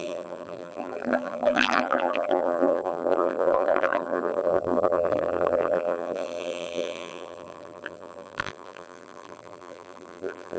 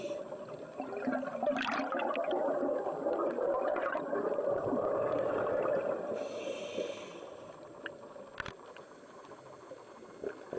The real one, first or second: second